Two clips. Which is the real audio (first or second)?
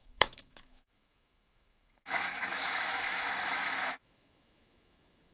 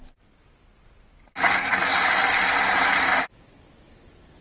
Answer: second